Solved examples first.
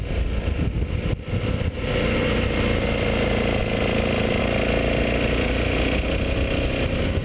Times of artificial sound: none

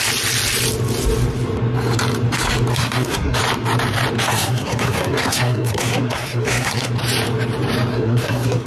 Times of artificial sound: 2.7-3.4 (codec, SNAC); 4.3-6.9; 7.9-8.7

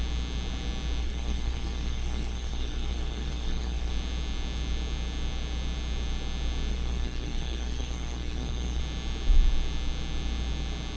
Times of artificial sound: 1.0-3.9 (codec, SNAC); 6.7-8.8